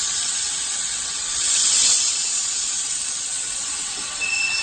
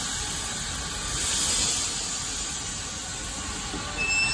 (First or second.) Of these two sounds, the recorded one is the second